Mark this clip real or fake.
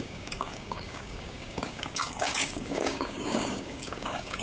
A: fake